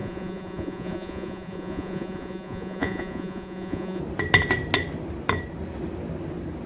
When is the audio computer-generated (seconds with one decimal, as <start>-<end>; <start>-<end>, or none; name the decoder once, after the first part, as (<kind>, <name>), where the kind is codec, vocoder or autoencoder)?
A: 0.0-4.0 (vocoder, Vocos)